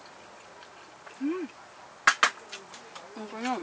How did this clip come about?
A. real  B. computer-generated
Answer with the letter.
A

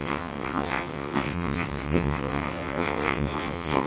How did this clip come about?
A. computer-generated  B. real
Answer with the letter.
A